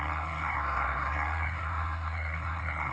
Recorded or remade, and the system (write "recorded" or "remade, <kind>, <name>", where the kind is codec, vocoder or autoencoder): remade, codec, SNAC